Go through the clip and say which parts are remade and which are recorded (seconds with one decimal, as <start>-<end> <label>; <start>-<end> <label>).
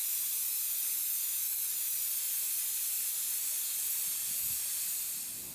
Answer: 0.0-5.5 recorded